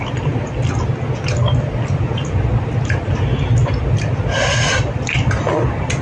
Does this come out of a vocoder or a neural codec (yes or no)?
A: no